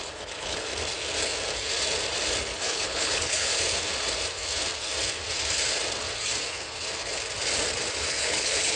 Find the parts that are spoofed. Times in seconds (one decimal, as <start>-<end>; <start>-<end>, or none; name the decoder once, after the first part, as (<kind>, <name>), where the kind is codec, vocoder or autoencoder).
0.0-0.7 (codec, HILCodec); 2.6-3.5; 8.2-8.8